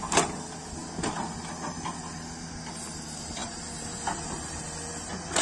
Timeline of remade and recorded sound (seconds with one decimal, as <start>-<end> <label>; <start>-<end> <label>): 0.0-5.4 recorded